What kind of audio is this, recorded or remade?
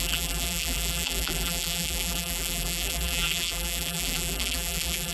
remade